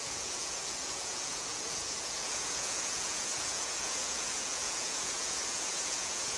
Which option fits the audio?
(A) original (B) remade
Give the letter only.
B